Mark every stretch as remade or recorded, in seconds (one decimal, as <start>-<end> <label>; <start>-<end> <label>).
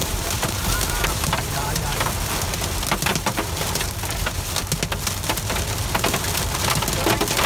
0.0-2.1 remade; 2.1-3.1 recorded; 3.1-4.5 remade; 4.5-7.5 recorded